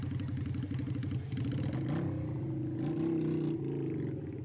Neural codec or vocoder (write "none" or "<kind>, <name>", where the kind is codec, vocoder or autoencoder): none